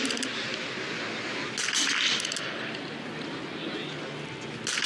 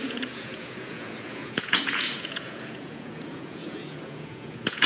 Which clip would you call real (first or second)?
first